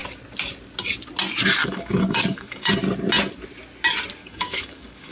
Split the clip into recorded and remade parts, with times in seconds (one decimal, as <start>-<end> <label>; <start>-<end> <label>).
0.0-1.6 recorded; 1.6-2.7 remade; 2.7-4.2 recorded; 4.2-5.1 remade